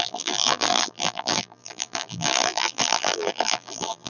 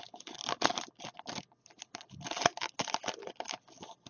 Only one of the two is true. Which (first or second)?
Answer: second